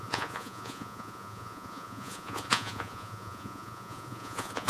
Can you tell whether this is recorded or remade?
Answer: remade